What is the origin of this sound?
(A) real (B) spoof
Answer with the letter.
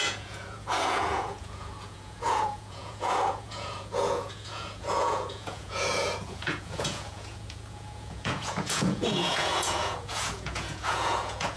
B